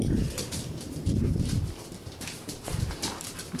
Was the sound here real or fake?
fake